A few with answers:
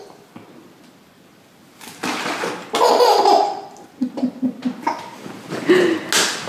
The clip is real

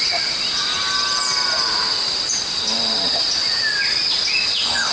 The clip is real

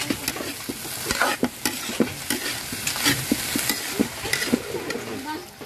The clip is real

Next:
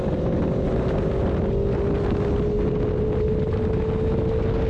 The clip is real